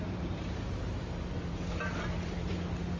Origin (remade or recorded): remade